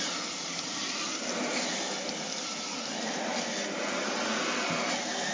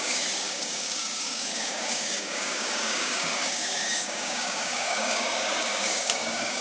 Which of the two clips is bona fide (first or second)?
first